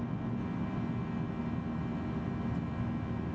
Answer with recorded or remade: recorded